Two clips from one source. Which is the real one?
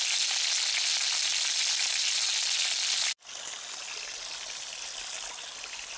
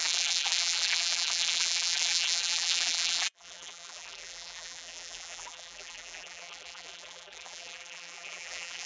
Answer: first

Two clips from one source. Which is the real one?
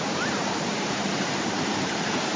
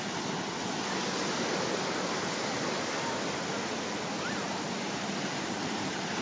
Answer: second